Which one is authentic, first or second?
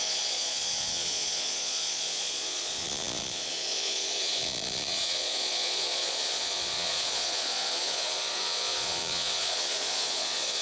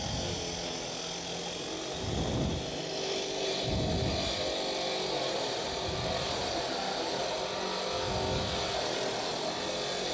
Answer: second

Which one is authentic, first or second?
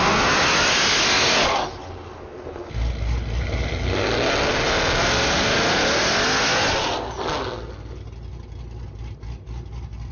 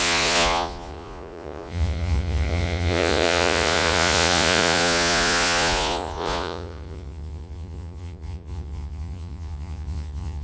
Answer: first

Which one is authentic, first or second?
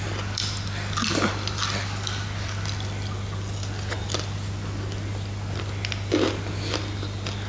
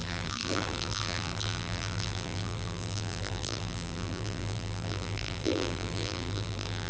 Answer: first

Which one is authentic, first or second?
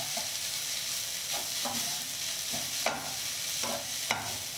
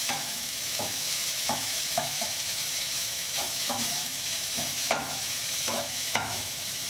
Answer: first